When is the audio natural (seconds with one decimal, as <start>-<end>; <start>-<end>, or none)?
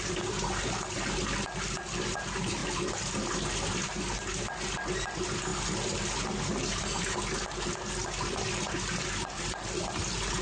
0.0-10.4